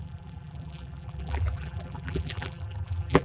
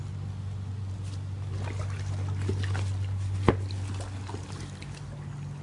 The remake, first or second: first